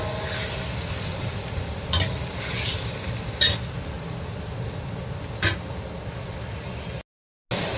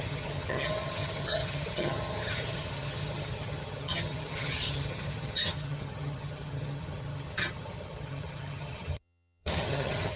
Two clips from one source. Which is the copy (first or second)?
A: second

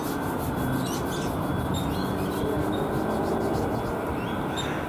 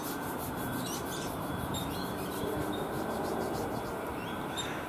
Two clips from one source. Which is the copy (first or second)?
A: second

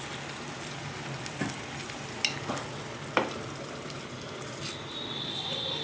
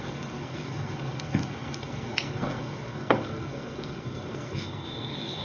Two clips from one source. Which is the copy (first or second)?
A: second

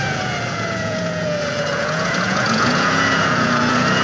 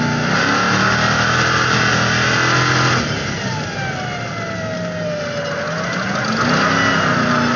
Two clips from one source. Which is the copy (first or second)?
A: first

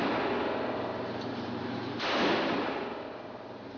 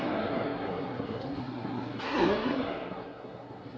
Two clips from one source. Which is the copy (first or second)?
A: second